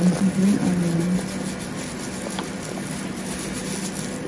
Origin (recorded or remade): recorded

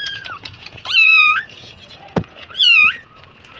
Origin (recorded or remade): remade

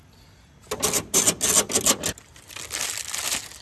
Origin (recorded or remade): recorded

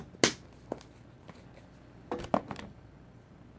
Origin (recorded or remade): recorded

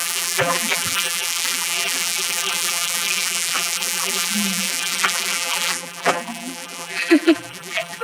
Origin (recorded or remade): remade